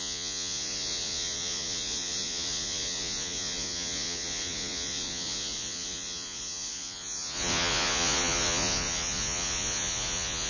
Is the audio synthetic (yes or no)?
yes